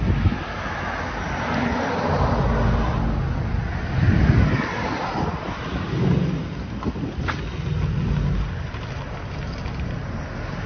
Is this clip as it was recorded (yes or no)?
yes